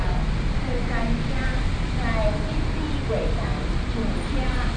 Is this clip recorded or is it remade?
recorded